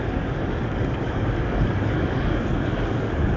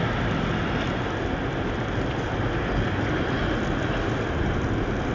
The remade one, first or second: first